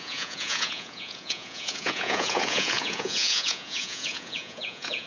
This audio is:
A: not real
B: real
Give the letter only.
A